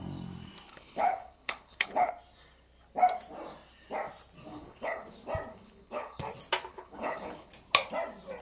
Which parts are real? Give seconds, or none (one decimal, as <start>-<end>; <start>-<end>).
0.0-0.7; 2.1-4.5; 5.1-5.5; 6.2-6.7; 7.5-8.4